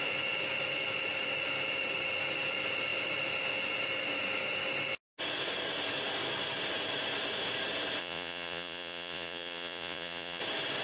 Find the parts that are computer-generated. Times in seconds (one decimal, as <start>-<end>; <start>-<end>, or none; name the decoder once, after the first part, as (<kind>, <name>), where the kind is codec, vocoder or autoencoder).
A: 8.0-10.4 (vocoder, Vocos)